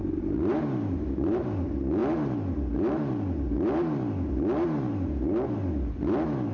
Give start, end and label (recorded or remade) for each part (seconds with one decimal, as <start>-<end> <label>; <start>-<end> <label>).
0.0-1.6 remade; 1.6-6.5 recorded